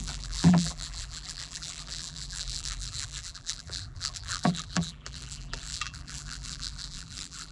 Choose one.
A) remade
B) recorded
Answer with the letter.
A